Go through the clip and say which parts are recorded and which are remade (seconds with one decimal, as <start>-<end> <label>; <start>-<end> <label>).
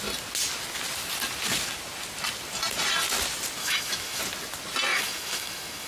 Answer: 0.0-3.6 recorded; 3.6-4.2 remade; 4.2-4.9 recorded; 4.9-5.9 remade